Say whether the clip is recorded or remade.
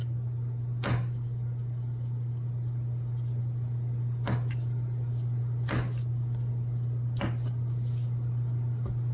recorded